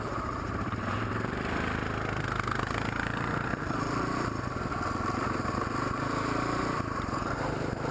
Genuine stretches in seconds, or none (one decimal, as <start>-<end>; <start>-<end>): 1.8-6.1